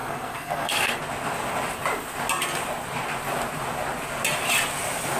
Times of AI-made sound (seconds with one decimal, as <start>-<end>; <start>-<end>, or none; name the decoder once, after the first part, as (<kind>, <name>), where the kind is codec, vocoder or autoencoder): 0.0-1.0 (codec, SNAC)